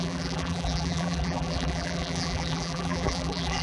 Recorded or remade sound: remade